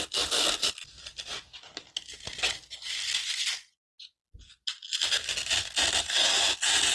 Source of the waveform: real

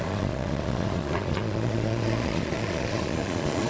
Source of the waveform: fake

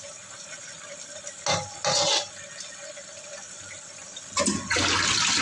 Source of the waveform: real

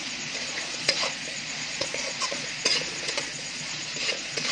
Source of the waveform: fake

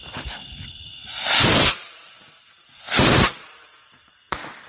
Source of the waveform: fake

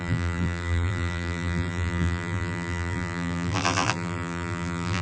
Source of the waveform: fake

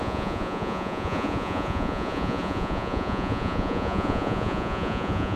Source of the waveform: fake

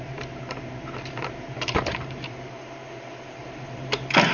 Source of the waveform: fake